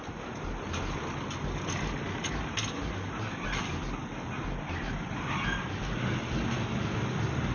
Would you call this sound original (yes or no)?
yes